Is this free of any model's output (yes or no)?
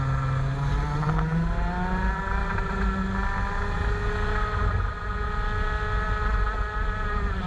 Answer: yes